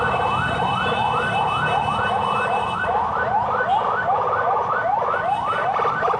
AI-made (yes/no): no